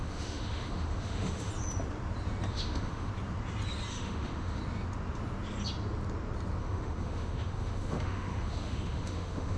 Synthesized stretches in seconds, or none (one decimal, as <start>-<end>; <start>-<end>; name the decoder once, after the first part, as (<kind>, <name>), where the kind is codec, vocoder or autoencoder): 0.0-1.5 (autoencoder, DAC-VAE); 2.5-3.1; 3.9-4.6; 6.6-9.6

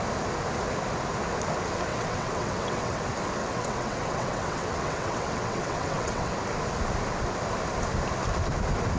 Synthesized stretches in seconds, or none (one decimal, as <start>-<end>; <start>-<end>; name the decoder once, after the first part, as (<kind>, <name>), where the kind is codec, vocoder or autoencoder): 1.9-3.0 (vocoder, WaveNeXt); 3.4-6.3

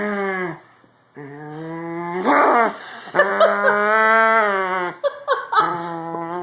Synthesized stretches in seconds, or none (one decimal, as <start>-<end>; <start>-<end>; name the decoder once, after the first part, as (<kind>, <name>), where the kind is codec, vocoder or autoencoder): none

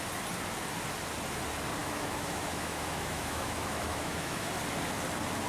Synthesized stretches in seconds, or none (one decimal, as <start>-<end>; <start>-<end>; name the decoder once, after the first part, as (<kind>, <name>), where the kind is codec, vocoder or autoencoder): 1.8-4.5 (autoencoder, DAC-VAE)